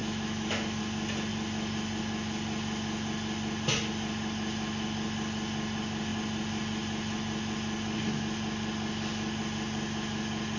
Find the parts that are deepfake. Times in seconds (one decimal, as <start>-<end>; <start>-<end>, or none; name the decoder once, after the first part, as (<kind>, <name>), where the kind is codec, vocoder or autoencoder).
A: 0.0-0.8 (autoencoder, DAC-VAE)